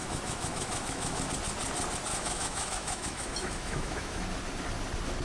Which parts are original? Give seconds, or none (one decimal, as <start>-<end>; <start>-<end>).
1.3-2.1; 4.2-5.2